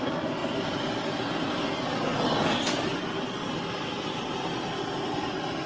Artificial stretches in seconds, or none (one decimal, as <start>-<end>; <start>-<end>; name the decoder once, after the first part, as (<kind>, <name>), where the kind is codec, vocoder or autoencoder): 0.0-0.4 (vocoder, BigVGAN v2); 1.7-5.7